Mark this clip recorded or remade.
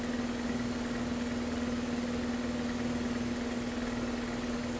recorded